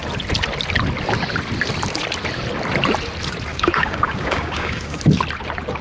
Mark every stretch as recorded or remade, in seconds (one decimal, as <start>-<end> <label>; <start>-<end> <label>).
0.0-3.5 recorded; 3.5-5.0 remade; 5.0-5.8 recorded